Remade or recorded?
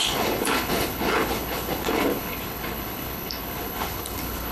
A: remade